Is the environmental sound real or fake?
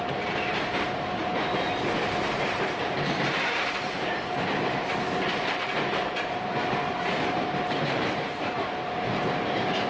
fake